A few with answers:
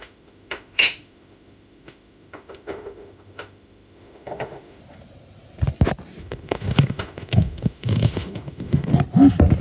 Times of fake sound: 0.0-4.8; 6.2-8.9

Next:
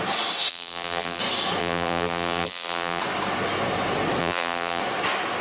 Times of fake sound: 0.5-1.2; 1.6-3.0; 4.2-4.8

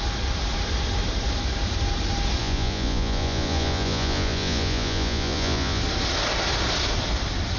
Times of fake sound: 2.4-5.8

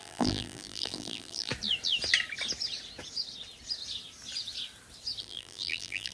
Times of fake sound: 0.0-1.5; 5.2-6.1

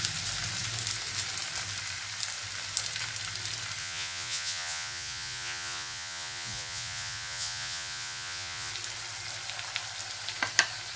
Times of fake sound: 3.8-8.7

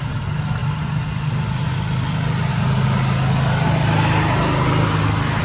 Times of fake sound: 0.6-2.1; 2.5-5.4

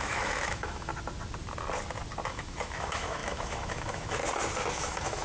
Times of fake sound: 0.0-0.9; 2.3-4.2; 4.7-5.2